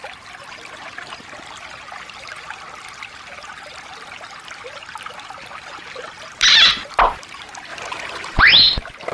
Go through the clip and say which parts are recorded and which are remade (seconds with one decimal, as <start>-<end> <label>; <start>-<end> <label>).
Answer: 0.0-9.1 recorded